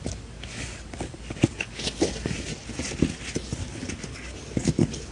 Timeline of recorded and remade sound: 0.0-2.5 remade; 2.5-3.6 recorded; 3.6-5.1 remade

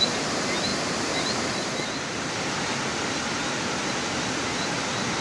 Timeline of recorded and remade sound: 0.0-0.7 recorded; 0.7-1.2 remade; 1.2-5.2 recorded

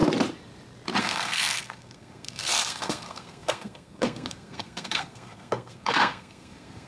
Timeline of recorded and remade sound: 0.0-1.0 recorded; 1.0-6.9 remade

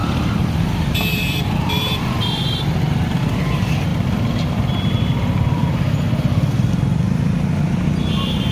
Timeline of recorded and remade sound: 0.0-1.7 remade; 1.7-8.5 recorded

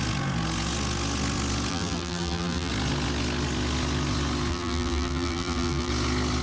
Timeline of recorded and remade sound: 0.0-1.7 recorded; 1.7-2.7 remade; 2.7-4.5 recorded; 4.5-5.9 remade; 5.9-6.4 recorded